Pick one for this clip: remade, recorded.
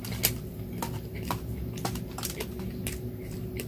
recorded